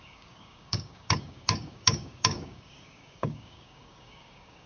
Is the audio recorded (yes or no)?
no